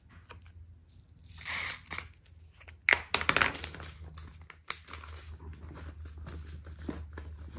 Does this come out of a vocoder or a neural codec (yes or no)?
no